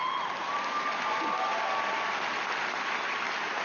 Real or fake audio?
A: real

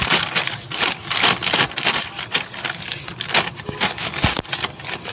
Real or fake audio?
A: real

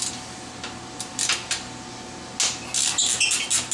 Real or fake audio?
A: real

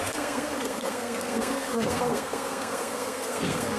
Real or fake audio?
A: fake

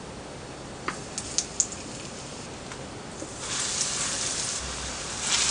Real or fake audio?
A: real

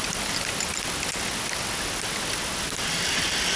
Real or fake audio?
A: real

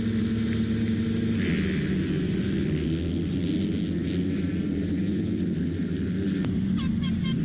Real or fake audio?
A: real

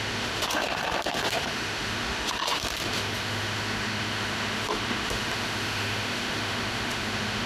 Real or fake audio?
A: fake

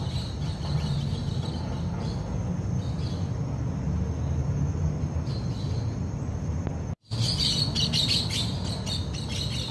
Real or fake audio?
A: real